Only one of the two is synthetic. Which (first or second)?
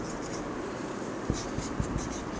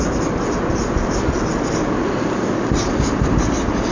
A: first